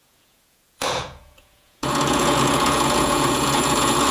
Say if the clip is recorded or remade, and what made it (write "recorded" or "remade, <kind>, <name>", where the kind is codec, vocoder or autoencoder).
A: remade, vocoder, Vocos